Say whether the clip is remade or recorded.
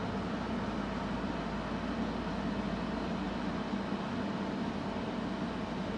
recorded